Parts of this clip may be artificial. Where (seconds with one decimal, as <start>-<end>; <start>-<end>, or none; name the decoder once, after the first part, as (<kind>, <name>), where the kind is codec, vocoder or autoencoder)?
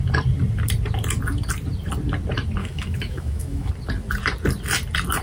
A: 2.6-3.7 (autoencoder, DAC-VAE)